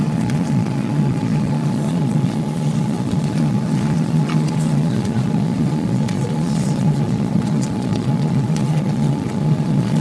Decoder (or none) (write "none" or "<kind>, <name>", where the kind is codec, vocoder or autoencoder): vocoder, Vocos